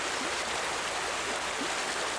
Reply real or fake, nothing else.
real